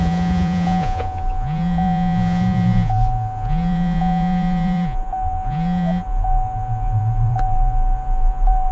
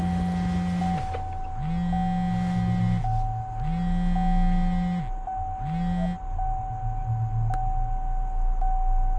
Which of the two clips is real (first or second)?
second